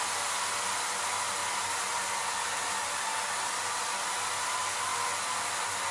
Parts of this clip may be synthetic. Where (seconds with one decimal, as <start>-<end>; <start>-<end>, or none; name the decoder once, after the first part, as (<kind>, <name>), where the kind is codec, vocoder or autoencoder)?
none